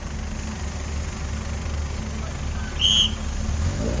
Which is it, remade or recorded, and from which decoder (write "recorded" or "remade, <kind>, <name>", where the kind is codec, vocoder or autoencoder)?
recorded